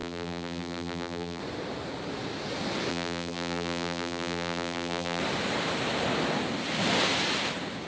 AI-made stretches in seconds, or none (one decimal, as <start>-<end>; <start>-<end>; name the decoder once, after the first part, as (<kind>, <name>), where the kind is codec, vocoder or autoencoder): 0.0-1.4 (vocoder, BigVGAN v2); 2.9-5.2